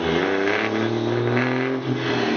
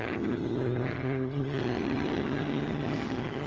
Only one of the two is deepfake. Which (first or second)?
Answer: second